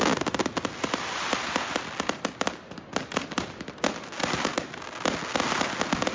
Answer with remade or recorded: recorded